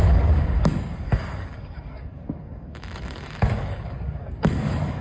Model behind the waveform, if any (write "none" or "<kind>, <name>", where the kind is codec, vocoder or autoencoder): codec, DAC